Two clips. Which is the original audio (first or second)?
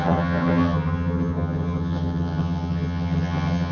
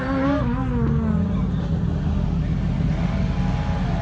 second